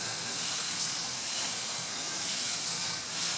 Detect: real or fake fake